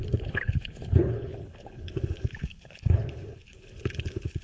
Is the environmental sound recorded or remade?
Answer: remade